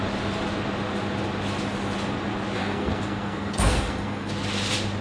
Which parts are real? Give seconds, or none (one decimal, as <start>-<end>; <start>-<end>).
0.0-2.6; 4.3-5.0